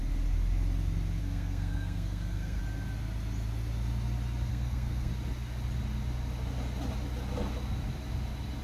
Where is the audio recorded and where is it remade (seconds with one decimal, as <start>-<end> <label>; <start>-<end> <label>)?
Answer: 0.0-1.2 recorded; 1.2-2.6 remade; 2.6-4.5 recorded; 4.5-5.1 remade; 5.1-8.6 recorded